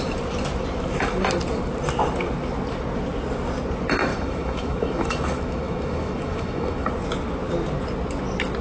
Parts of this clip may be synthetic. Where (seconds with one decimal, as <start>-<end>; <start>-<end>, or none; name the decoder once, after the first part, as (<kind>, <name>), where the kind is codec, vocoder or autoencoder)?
4.1-6.9 (autoencoder, DAC-VAE)